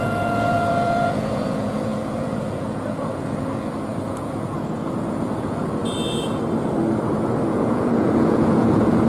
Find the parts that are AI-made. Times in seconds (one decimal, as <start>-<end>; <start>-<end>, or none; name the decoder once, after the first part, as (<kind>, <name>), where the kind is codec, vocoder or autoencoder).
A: 0.0-5.8 (vocoder, Vocos); 7.5-9.1